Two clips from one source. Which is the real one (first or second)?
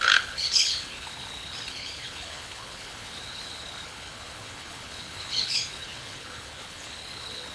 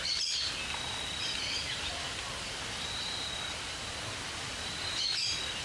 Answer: second